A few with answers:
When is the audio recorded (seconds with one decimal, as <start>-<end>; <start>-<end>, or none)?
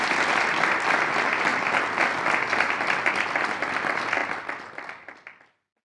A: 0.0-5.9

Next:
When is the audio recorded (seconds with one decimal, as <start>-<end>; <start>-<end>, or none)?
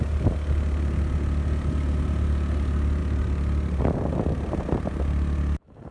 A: 0.0-5.9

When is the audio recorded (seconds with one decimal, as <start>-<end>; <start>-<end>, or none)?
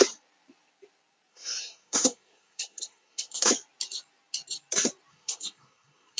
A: 0.0-1.3; 3.5-5.1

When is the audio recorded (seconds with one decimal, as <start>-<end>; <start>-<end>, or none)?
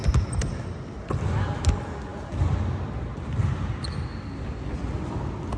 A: 0.0-5.6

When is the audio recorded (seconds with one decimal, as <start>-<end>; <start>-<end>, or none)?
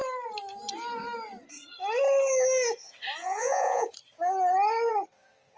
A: 0.0-3.2; 3.9-5.6